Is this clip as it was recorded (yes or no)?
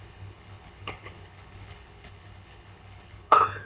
no